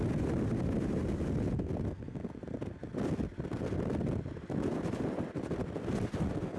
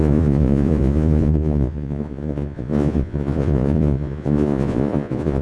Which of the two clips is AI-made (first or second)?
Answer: second